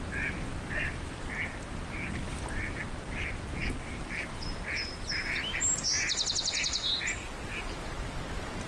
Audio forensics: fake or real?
real